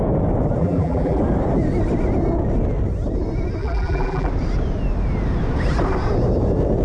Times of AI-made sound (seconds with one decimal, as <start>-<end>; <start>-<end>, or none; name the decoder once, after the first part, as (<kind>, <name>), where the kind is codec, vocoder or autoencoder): 0.6-1.2 (vocoder, BigVGAN v2); 3.6-4.3